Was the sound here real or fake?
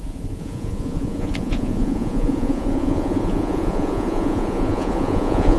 fake